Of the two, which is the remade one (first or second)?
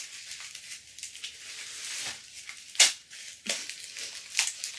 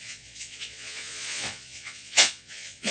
second